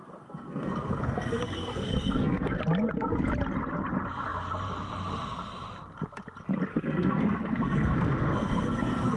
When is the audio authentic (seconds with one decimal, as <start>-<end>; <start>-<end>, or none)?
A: 2.6-6.7